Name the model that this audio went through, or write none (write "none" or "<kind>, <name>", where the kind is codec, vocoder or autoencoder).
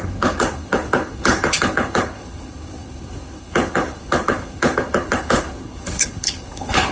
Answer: codec, HILCodec